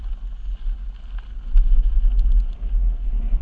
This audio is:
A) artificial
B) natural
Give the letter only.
B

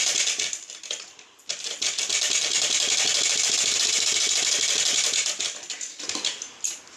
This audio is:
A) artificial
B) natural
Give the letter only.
B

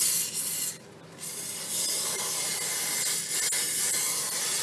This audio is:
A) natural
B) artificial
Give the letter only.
A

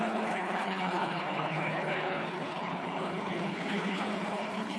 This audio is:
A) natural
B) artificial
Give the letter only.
B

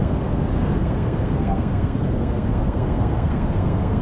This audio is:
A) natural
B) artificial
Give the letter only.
B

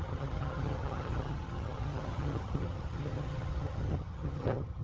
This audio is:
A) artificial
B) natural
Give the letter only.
A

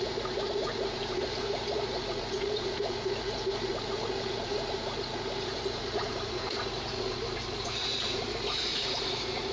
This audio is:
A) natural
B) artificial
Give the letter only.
B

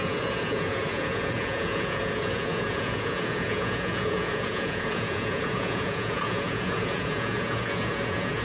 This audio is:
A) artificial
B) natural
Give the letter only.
A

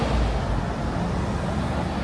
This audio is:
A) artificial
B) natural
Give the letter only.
B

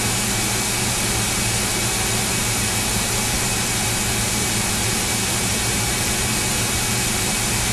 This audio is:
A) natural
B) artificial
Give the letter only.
B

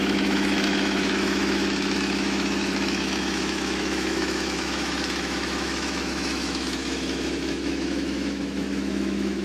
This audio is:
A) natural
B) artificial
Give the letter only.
B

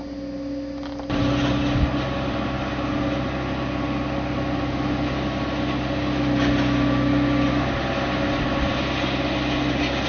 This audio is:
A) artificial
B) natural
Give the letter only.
B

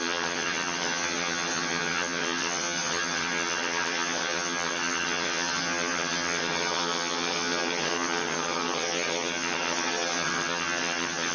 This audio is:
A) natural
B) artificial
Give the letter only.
B